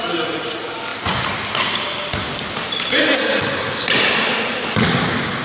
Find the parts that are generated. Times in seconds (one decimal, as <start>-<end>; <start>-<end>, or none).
none